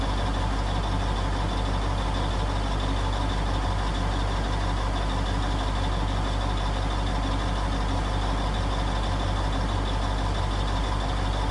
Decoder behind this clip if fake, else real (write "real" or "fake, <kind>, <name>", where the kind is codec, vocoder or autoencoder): real